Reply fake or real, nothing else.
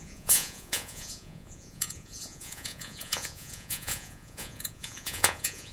fake